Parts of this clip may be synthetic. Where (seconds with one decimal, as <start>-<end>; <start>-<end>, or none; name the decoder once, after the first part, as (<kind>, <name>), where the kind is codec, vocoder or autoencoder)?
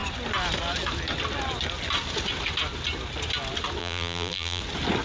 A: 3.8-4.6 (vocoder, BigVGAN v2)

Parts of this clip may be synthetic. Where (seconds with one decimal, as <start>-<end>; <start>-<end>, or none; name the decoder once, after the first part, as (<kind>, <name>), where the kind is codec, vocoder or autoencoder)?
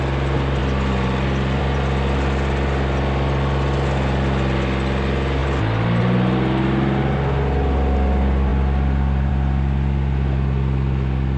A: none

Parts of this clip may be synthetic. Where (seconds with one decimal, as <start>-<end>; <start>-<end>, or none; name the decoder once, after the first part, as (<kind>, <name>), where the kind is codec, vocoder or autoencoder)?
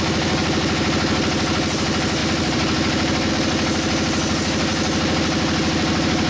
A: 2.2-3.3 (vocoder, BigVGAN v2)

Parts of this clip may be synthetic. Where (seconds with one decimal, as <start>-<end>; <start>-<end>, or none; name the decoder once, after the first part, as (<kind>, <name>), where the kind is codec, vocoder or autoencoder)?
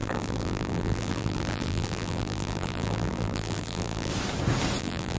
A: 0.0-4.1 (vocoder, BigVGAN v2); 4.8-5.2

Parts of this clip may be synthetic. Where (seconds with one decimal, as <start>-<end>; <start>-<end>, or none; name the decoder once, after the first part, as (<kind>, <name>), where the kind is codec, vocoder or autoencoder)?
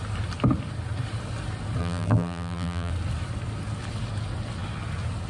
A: 1.8-2.9 (vocoder, BigVGAN v2)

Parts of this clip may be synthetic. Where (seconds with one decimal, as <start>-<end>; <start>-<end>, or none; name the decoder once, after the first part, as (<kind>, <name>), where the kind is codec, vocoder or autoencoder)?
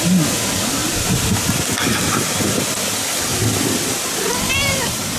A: 0.8-2.4 (vocoder, BigVGAN v2)